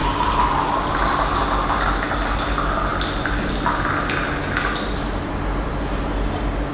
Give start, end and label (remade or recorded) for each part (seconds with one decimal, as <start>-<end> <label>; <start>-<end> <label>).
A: 0.0-6.7 recorded